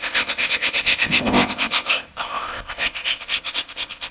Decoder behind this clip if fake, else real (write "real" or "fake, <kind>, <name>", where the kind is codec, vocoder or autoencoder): fake, codec, ZipCodec